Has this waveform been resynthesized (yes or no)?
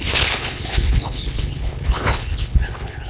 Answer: yes